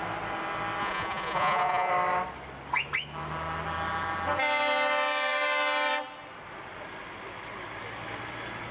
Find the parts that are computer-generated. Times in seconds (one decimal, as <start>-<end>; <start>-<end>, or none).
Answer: 0.8-1.9